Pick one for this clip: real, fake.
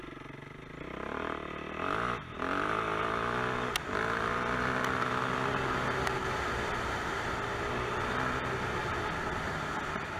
real